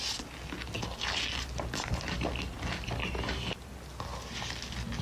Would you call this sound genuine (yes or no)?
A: yes